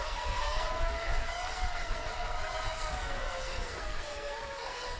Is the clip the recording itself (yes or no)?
no